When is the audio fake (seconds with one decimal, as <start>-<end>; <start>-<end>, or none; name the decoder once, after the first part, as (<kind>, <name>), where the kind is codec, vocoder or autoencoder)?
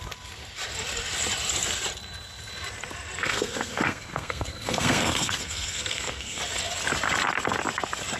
3.2-6.4 (codec, SNAC)